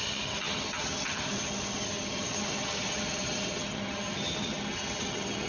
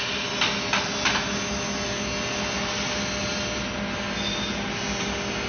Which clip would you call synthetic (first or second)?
first